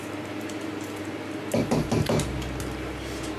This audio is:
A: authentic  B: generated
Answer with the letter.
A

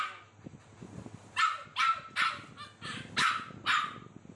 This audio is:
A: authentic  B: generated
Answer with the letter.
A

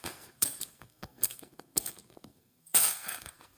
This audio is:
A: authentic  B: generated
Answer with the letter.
B